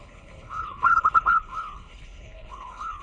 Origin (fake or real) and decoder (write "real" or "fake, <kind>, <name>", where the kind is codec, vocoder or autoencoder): fake, codec, HILCodec